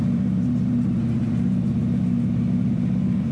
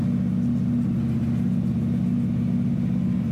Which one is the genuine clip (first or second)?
second